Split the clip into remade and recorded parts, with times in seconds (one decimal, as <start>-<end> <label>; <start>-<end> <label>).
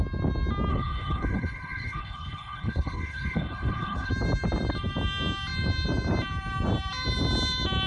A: 0.0-0.7 recorded; 0.7-4.1 remade; 4.1-7.9 recorded